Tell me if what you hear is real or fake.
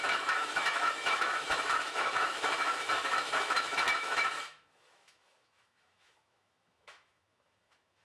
fake